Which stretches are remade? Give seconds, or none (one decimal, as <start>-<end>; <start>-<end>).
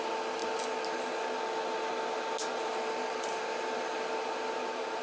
none